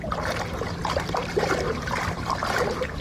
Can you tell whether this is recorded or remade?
recorded